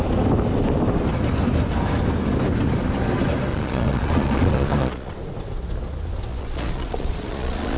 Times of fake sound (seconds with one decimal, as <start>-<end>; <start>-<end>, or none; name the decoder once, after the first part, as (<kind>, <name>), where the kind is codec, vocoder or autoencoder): 3.5-5.1 (vocoder, Vocos); 6.3-7.8